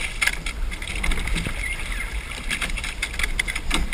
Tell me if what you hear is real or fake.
real